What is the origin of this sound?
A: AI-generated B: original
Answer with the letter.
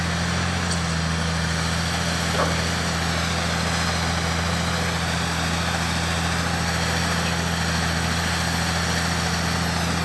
B